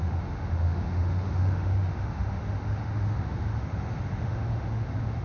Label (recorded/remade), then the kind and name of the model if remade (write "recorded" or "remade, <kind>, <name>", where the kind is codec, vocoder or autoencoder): remade, autoencoder, DAC-VAE